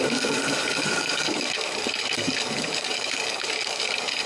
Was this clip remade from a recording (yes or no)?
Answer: yes